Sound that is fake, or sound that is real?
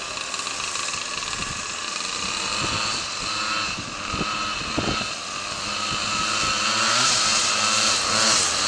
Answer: real